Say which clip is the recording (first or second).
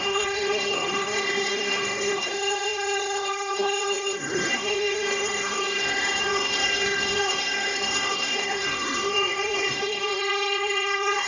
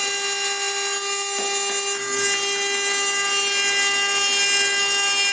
second